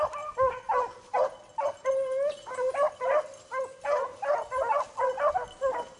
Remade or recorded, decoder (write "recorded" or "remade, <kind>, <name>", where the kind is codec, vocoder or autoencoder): recorded